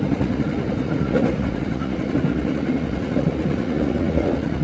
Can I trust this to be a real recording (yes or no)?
no